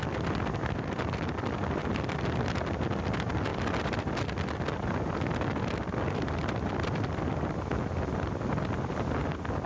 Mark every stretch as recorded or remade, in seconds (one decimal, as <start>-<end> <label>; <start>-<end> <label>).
0.0-9.7 recorded